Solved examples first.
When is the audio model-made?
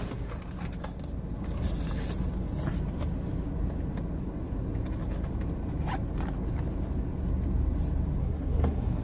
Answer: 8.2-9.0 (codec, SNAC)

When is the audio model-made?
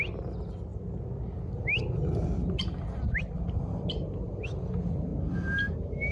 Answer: none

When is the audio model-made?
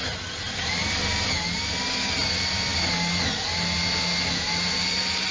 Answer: none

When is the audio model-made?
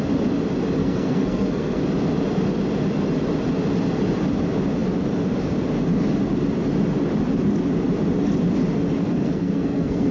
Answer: 0.8-1.8 (codec, SNAC); 9.0-10.1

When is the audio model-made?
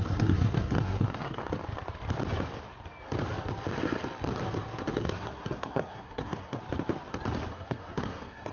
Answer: 0.0-1.4 (codec, SNAC); 4.9-6.6; 7.5-8.5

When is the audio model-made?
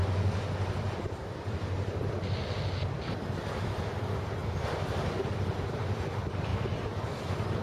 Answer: none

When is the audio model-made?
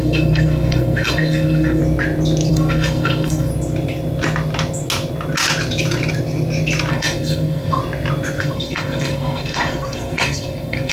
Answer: 0.0-1.8 (codec, SNAC); 2.5-3.5; 6.9-7.8; 8.4-10.9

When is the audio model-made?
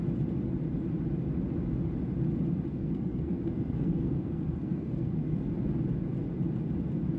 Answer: 2.7-5.5 (codec, SNAC)